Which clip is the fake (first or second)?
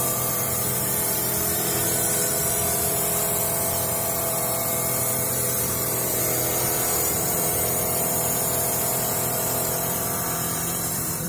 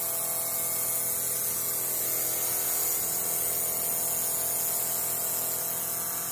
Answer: first